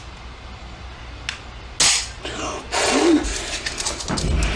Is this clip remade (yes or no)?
no